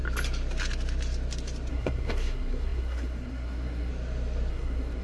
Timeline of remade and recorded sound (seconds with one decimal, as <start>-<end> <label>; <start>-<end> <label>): 0.0-1.7 recorded; 1.7-3.9 remade; 3.9-4.5 recorded; 4.5-5.0 remade